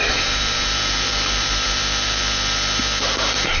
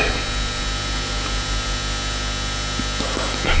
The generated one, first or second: first